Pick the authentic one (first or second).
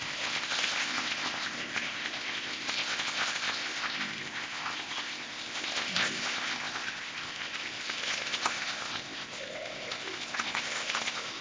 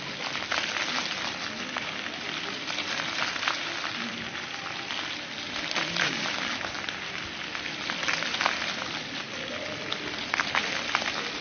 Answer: second